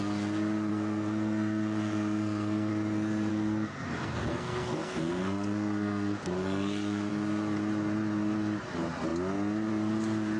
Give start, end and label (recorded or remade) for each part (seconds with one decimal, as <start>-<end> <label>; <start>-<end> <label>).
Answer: 0.0-0.7 recorded; 0.7-2.7 remade; 2.7-3.3 recorded; 3.3-7.1 remade; 7.1-10.4 recorded